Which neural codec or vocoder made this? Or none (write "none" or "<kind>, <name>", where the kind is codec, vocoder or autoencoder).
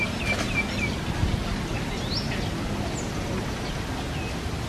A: none